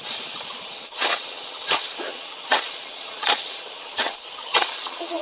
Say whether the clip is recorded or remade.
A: remade